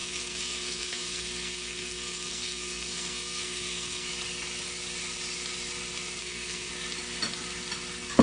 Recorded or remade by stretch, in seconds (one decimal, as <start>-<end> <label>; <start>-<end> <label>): 0.0-4.1 remade; 4.1-6.2 recorded; 6.2-6.7 remade; 6.7-8.2 recorded